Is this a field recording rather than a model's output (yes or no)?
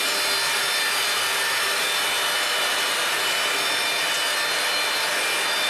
yes